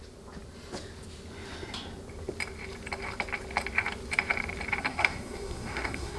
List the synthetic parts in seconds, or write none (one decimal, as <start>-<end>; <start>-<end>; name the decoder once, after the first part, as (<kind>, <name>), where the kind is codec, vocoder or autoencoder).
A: 4.8-6.2 (codec, SNAC)